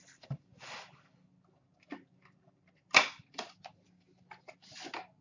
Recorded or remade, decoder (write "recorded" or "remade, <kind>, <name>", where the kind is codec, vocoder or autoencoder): recorded